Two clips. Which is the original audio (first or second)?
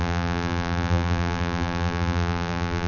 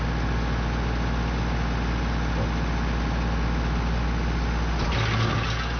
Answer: second